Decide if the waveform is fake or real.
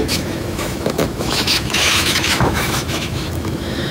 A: fake